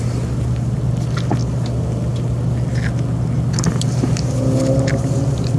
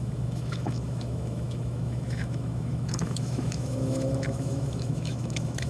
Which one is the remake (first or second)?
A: second